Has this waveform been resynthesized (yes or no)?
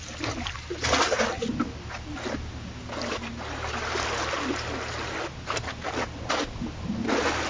no